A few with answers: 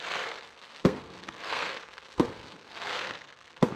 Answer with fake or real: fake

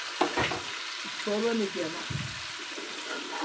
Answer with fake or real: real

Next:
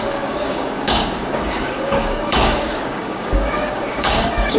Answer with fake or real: fake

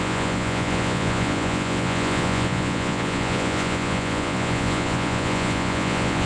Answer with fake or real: fake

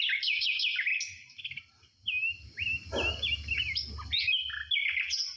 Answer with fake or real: real